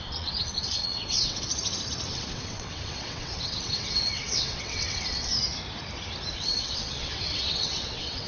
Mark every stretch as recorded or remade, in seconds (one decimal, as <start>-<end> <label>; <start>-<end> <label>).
0.0-1.5 remade; 1.5-2.1 recorded; 2.1-5.3 remade; 5.3-6.3 recorded; 6.3-8.3 remade